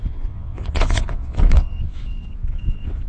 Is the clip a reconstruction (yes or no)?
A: yes